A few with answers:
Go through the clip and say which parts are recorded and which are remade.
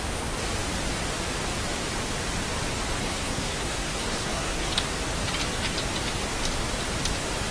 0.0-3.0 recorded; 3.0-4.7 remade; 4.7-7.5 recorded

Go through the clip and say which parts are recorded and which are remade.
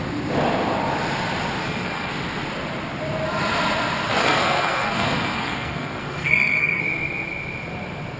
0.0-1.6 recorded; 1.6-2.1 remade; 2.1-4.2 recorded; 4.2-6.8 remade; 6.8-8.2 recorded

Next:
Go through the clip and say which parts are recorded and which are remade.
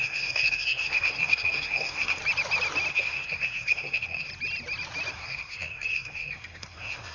0.0-2.2 remade; 2.2-2.9 recorded; 2.9-4.3 remade; 4.3-5.1 recorded; 5.1-7.1 remade